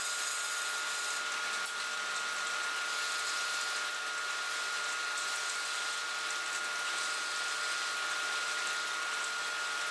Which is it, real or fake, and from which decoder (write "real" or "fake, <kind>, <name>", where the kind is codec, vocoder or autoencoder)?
real